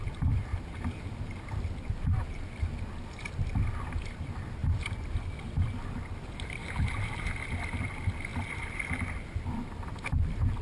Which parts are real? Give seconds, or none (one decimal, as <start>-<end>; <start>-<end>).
0.0-6.6; 7.2-10.6